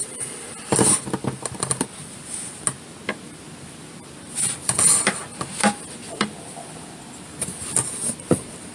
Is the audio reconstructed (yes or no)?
no